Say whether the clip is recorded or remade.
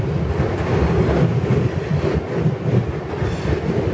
recorded